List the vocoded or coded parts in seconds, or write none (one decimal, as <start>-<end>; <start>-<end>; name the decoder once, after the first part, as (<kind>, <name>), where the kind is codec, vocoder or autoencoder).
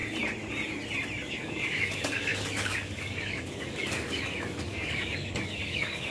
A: 1.3-6.1 (codec, DAC)